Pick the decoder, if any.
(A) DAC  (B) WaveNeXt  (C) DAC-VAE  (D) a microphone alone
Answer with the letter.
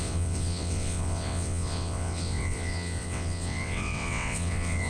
B